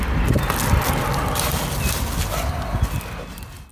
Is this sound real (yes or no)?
yes